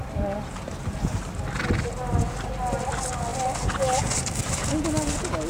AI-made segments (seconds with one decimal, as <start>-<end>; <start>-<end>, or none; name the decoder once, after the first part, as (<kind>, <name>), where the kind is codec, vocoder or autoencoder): none